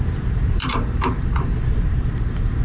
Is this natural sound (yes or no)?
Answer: no